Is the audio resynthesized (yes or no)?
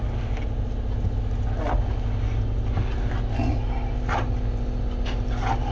no